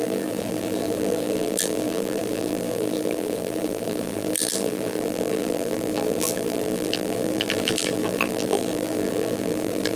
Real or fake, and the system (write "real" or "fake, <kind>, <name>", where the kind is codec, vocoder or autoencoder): fake, vocoder, BigVGAN v2